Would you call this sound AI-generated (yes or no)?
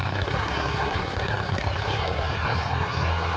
yes